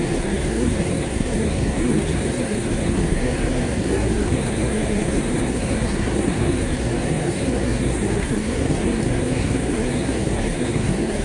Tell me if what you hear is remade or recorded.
remade